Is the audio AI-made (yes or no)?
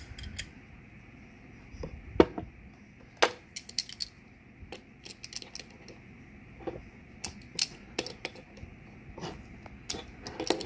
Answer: no